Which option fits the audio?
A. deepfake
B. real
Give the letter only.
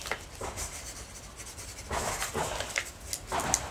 B